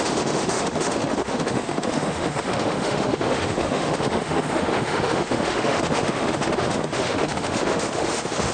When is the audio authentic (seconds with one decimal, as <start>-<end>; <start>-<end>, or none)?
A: none